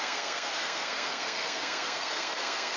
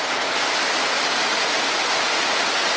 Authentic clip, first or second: second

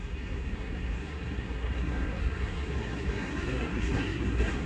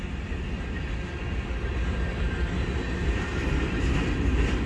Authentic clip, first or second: second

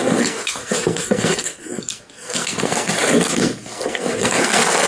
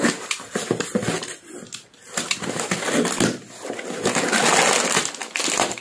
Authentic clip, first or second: second